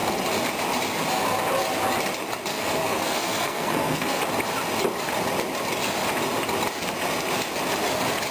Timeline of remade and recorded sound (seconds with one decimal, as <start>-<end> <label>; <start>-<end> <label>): 0.0-2.5 recorded; 2.5-4.2 remade; 4.2-8.3 recorded